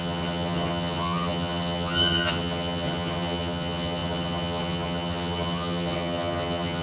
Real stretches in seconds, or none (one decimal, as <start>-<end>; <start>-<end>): none